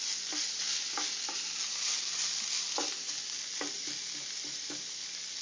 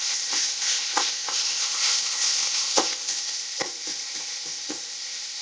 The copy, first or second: second